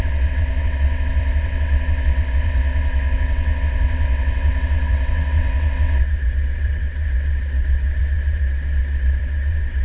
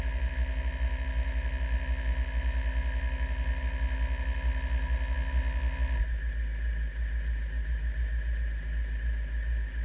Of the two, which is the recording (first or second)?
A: second